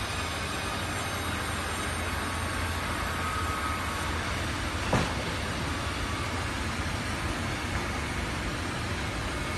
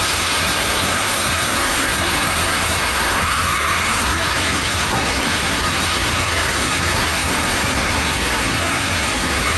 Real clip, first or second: first